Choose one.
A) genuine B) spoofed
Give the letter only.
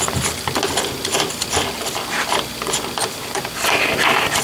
A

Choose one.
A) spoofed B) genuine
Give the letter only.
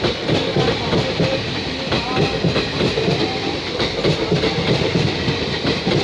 B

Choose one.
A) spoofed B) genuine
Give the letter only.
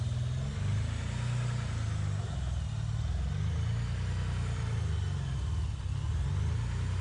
B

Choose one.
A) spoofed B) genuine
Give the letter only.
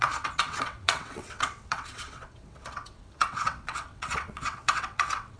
A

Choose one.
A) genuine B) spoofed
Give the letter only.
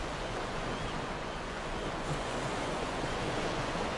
B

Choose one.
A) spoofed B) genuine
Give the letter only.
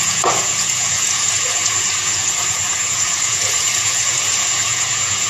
A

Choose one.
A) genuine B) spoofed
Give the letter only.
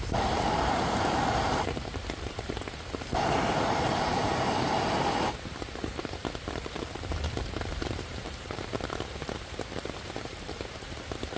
B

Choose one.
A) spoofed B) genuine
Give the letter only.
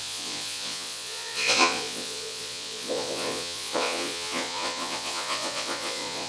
A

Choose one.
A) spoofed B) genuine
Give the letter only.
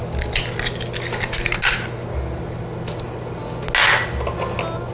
B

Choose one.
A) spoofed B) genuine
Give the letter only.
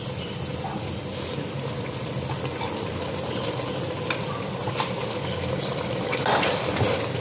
B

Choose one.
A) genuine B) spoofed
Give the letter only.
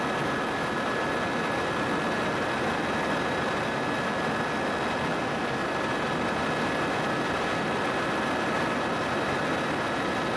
A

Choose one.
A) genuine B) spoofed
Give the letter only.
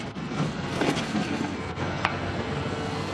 B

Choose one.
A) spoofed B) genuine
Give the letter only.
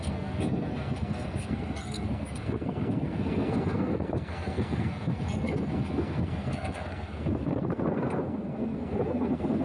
A